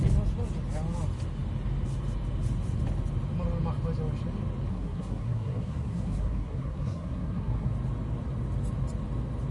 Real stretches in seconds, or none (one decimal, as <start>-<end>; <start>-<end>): 0.0-4.7; 7.7-9.5